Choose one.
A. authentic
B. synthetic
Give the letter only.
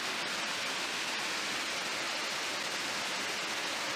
A